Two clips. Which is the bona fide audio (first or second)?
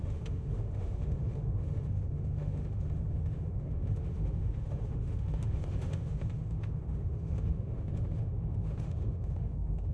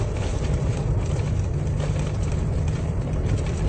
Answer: second